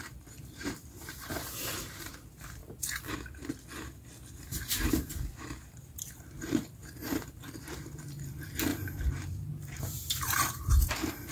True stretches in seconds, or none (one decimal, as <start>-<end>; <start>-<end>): 2.6-4.3